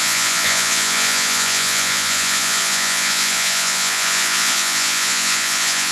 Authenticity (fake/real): fake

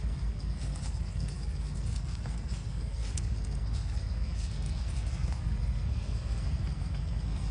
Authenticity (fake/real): fake